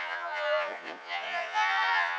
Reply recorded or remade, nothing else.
remade